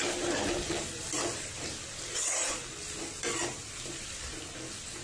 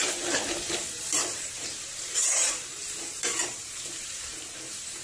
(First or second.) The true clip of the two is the first